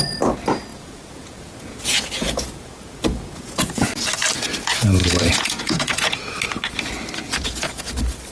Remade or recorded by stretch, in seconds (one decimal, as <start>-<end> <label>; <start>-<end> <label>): 0.0-0.7 recorded; 0.7-3.9 remade; 3.9-5.0 recorded; 5.0-6.3 remade; 6.3-7.2 recorded; 7.2-7.9 remade; 7.9-8.3 recorded